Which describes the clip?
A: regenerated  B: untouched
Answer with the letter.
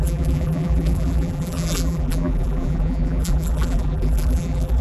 A